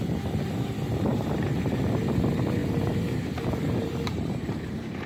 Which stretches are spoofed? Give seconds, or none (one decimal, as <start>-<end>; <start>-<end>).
1.1-1.7; 2.6-5.1